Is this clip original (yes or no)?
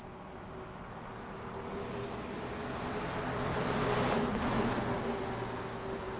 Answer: yes